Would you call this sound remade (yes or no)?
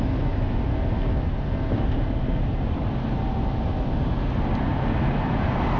no